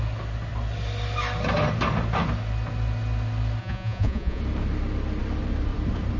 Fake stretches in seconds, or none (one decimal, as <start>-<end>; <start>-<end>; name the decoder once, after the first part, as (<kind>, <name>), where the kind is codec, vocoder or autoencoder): 3.6-4.4 (vocoder, Vocos)